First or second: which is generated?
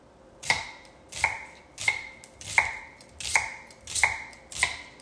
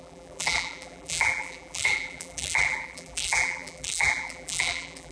second